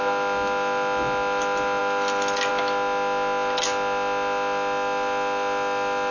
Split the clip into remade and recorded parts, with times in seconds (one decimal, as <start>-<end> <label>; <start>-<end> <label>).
0.0-6.1 recorded